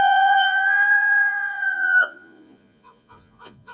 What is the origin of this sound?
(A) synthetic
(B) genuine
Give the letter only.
A